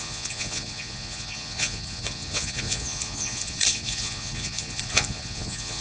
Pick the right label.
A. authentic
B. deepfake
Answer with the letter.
B